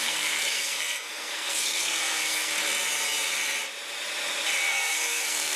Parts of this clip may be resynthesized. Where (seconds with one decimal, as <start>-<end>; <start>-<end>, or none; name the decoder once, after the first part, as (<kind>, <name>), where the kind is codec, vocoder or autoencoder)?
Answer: 0.0-2.5 (codec, SNAC); 4.7-5.6